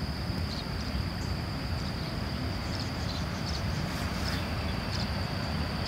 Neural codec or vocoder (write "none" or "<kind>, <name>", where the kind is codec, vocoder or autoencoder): vocoder, BigVGAN v2